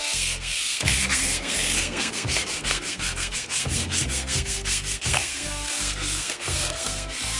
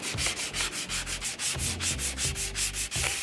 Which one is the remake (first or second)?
first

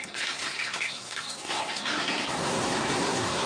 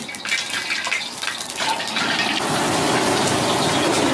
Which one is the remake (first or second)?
first